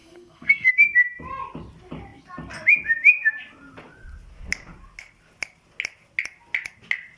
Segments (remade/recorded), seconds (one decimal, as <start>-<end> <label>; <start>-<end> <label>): 0.0-0.7 remade; 0.7-7.2 recorded